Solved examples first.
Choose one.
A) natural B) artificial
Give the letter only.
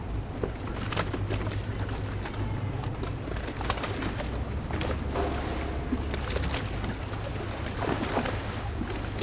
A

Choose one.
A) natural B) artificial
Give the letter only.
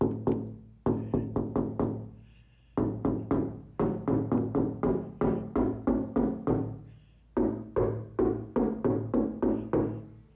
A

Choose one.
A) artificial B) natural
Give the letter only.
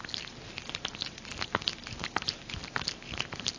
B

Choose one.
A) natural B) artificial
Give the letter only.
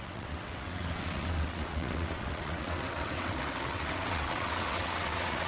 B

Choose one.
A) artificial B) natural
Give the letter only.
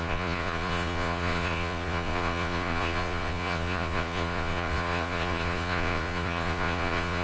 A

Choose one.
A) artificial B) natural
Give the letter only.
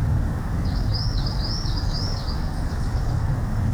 A